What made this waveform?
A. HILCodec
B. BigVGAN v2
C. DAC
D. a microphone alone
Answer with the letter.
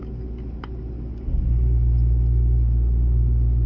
D